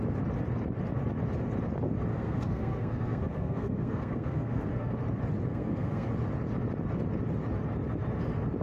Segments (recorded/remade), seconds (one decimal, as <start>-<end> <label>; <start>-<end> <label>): 0.0-2.1 recorded; 2.1-4.9 remade; 4.9-5.5 recorded; 5.5-6.1 remade; 6.1-8.6 recorded